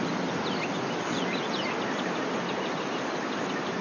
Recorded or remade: recorded